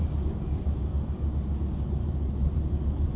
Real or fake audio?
real